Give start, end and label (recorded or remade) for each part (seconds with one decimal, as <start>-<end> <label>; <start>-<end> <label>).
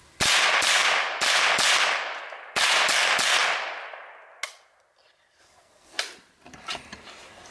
0.0-5.4 recorded; 5.4-6.0 remade; 6.0-7.5 recorded